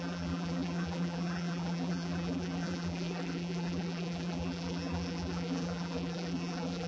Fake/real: fake